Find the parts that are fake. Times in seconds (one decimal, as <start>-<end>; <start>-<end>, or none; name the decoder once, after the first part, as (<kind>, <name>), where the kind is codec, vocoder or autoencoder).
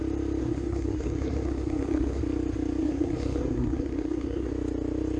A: 0.4-2.2 (codec, SNAC); 2.8-4.5